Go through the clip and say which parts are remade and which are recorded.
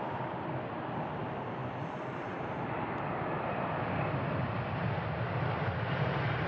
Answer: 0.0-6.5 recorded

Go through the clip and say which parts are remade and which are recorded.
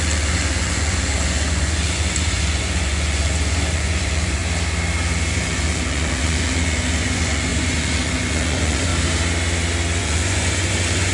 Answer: 0.0-4.4 remade; 4.4-5.3 recorded; 5.3-8.9 remade; 8.9-10.0 recorded; 10.0-11.1 remade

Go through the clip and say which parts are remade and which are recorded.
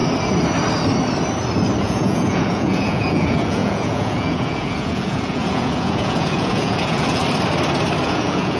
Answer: 0.0-1.8 recorded; 1.8-7.2 remade; 7.2-8.0 recorded; 8.0-8.6 remade